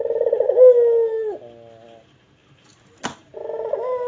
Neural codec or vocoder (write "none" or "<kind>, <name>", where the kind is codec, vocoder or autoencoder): none